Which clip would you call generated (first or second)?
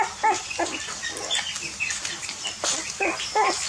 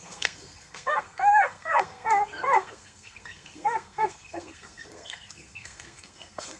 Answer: second